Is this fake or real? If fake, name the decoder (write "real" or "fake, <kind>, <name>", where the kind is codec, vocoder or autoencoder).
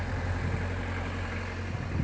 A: real